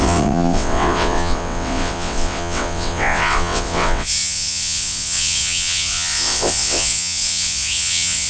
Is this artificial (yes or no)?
yes